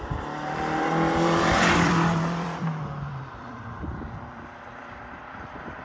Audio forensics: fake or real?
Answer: fake